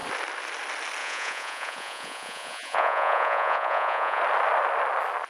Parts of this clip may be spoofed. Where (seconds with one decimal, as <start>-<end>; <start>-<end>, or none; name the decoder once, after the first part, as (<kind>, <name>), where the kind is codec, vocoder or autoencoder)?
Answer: 1.0-4.2 (vocoder, Vocos)